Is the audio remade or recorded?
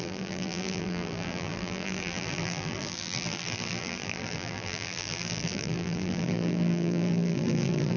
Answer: remade